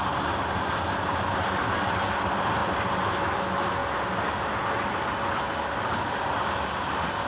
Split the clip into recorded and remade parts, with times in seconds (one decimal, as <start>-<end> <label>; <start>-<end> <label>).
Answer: 0.0-7.3 recorded